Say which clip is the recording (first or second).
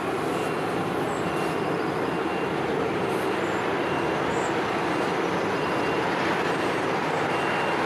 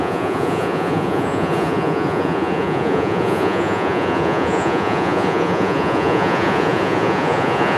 first